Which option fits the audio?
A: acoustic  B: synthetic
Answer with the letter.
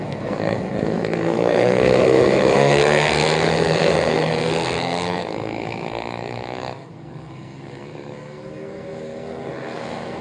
B